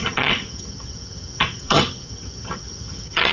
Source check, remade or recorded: remade